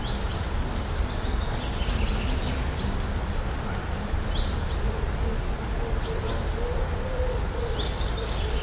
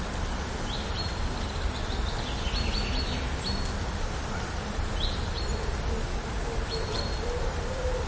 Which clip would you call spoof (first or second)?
second